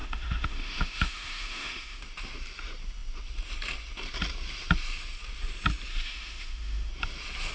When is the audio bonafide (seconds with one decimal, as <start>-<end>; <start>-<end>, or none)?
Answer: 2.0-5.9; 6.9-7.5